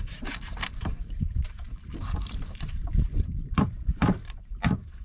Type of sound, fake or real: fake